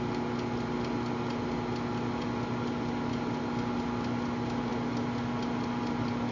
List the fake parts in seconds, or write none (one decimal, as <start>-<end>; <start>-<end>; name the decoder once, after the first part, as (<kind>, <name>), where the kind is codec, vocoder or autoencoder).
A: none